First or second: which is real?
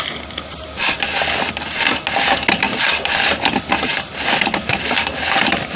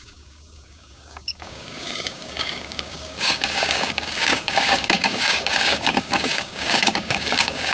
first